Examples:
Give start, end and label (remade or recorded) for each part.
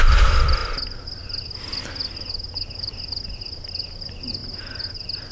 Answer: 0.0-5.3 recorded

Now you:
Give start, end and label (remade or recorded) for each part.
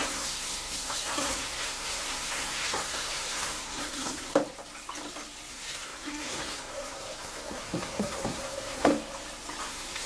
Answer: 0.0-4.3 remade; 4.3-5.5 recorded; 5.5-8.9 remade; 8.9-9.6 recorded; 9.6-10.1 remade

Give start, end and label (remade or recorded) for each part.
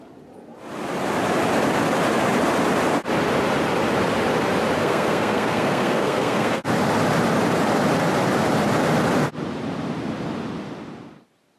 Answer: 0.0-4.8 recorded; 4.8-6.7 remade; 6.7-11.6 recorded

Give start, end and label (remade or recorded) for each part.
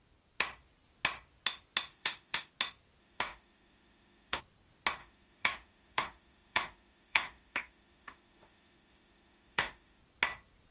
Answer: 0.0-1.9 recorded; 1.9-2.5 remade; 2.5-3.0 recorded; 3.0-4.4 remade; 4.4-5.0 recorded; 5.0-10.0 remade; 10.0-10.7 recorded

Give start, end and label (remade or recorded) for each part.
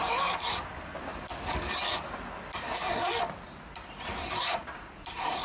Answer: 0.0-1.3 remade; 1.3-3.9 recorded; 3.9-5.4 remade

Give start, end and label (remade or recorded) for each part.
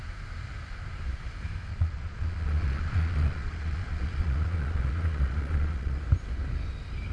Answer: 0.0-1.7 recorded; 1.7-6.0 remade; 6.0-7.1 recorded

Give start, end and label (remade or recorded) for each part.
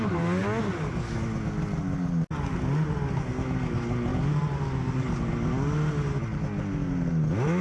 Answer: 0.0-4.1 recorded; 4.1-5.3 remade; 5.3-7.6 recorded